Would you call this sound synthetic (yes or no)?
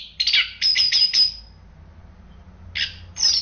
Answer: no